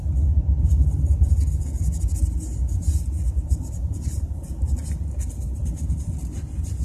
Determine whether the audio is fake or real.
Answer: real